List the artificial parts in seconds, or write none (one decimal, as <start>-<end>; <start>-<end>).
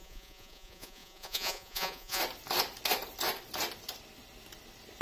0.0-2.2